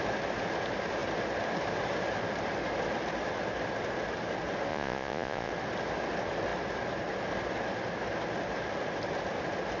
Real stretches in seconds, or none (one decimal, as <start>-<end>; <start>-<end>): 0.0-4.7; 5.5-9.8